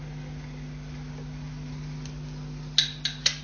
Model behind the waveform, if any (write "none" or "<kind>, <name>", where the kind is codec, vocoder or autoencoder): none